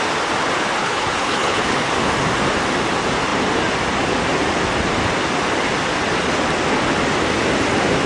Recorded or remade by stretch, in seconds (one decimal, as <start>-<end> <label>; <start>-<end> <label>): 0.0-0.8 recorded; 0.8-1.9 remade; 1.9-8.1 recorded